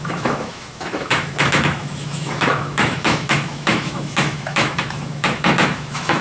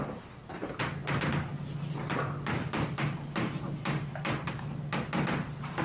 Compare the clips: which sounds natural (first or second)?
second